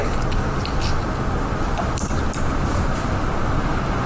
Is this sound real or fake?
fake